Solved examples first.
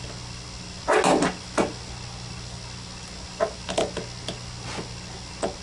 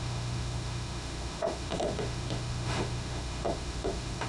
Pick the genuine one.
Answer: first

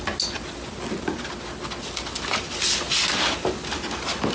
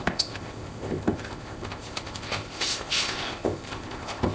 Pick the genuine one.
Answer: first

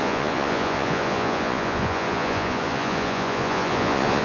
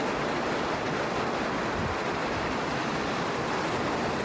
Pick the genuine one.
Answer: second